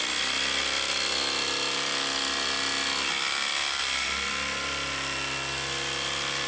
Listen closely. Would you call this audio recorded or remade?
recorded